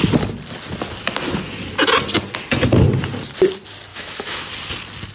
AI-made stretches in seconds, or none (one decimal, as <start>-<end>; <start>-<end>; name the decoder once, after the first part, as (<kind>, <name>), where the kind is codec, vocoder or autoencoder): 3.9-4.5 (autoencoder, DAC-VAE)